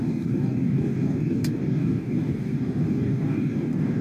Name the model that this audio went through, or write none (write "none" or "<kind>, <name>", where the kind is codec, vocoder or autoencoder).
codec, DAC